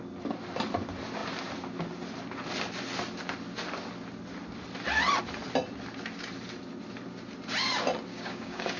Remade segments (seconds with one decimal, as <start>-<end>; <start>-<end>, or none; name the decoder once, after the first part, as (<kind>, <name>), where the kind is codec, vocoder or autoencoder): 8.1-8.8 (codec, DAC)

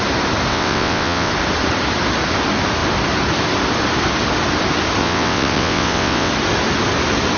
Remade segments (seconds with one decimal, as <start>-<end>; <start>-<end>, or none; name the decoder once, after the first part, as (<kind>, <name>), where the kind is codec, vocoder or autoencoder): 0.5-1.3 (vocoder, WaveNeXt); 5.0-6.3